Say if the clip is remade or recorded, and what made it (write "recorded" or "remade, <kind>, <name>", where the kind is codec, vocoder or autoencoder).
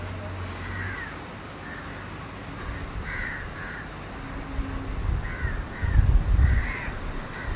recorded